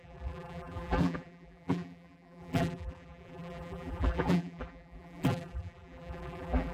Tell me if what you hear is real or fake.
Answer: fake